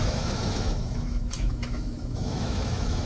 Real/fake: fake